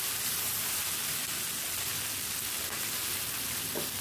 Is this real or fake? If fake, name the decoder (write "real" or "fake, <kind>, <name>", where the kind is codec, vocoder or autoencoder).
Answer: real